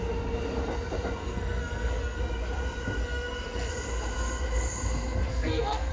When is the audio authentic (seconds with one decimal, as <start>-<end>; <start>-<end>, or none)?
0.0-1.2; 2.2-3.0; 3.7-5.3